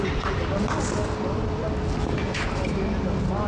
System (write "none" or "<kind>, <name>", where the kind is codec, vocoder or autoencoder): none